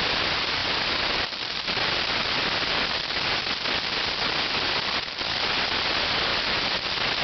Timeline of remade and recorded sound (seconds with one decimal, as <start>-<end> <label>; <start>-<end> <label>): 0.0-0.6 recorded; 0.6-3.5 remade; 3.5-6.3 recorded; 6.3-7.2 remade